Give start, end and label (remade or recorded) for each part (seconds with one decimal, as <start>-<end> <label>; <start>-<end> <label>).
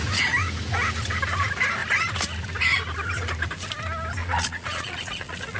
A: 0.0-4.2 recorded; 4.2-5.6 remade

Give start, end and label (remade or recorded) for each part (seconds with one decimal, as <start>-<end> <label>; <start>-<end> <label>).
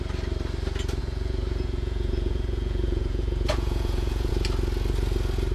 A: 0.0-1.0 recorded; 1.0-4.3 remade; 4.3-5.5 recorded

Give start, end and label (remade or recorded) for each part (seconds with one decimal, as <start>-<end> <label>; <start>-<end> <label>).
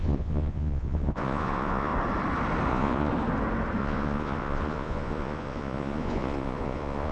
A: 0.0-1.9 remade; 1.9-2.7 recorded; 2.7-3.1 remade; 3.1-3.8 recorded; 3.8-7.1 remade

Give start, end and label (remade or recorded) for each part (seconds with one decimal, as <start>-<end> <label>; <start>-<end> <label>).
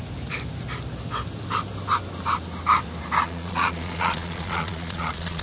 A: 0.0-3.2 recorded; 3.2-5.4 remade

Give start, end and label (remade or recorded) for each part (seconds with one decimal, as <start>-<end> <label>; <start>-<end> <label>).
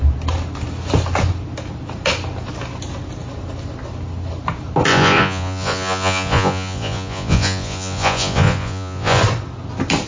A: 0.0-4.9 recorded; 4.9-9.2 remade; 9.2-10.1 recorded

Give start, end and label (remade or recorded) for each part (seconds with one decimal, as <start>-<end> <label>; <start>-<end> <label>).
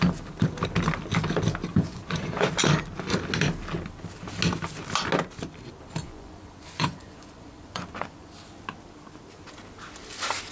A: 0.0-1.7 recorded; 1.7-2.5 remade; 2.5-6.0 recorded; 6.0-8.3 remade; 8.3-10.5 recorded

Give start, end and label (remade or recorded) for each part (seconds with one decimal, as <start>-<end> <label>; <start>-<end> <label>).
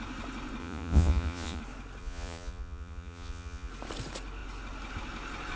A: 0.0-0.6 recorded; 0.6-1.6 remade; 1.6-2.0 recorded; 2.0-3.7 remade; 3.7-5.6 recorded